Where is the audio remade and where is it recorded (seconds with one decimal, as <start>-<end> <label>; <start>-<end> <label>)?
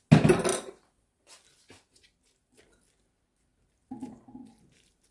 0.0-0.5 recorded; 0.5-2.6 remade; 2.6-3.5 recorded; 3.5-4.5 remade; 4.5-5.1 recorded